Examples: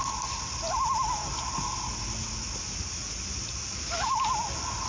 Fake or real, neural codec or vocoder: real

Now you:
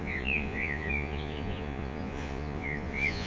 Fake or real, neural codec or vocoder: fake, vocoder, Vocos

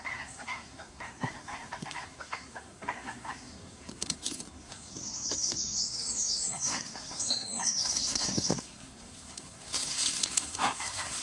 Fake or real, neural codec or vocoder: fake, codec, SNAC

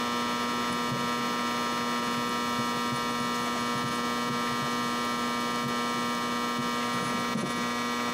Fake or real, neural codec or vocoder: real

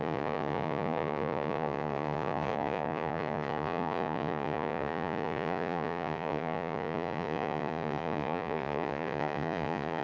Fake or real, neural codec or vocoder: fake, vocoder, Vocos